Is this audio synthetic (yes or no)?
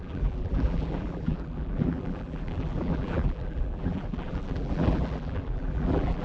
yes